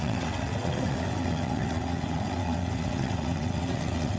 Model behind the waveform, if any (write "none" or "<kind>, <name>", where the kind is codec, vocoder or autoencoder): vocoder, WaveNeXt